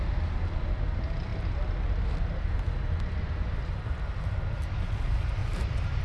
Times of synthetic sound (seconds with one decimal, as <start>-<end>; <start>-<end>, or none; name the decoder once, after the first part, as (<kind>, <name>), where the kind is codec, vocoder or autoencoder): 5.4-6.0 (vocoder, BigVGAN v2)